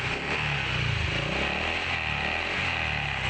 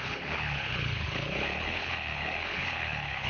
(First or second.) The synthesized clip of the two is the second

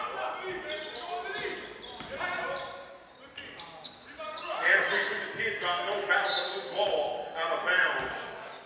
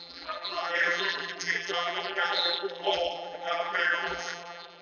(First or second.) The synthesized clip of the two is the second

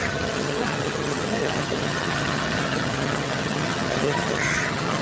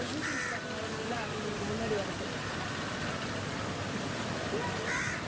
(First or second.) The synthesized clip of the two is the first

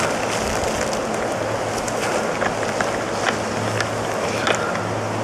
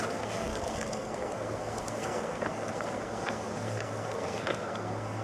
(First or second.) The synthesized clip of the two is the second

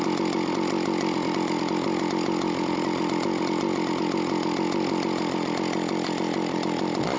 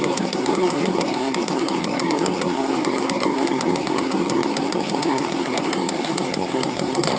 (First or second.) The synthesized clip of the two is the second